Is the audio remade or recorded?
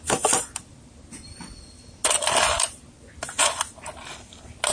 recorded